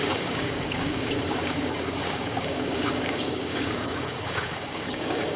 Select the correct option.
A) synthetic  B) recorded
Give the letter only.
A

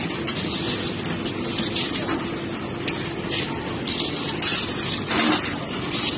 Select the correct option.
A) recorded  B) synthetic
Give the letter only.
A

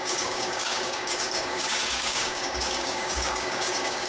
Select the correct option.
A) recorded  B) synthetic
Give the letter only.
B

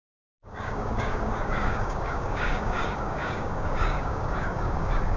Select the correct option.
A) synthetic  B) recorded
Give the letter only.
A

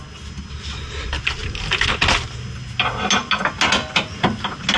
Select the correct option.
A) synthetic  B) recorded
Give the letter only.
B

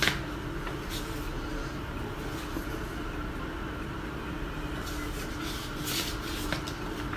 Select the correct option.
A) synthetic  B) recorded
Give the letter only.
B